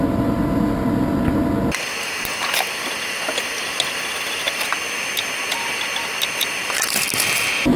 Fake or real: real